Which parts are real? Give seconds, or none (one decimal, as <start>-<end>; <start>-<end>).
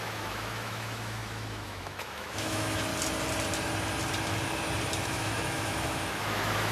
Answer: 2.9-5.0